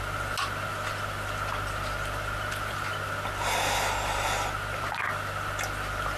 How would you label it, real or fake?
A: real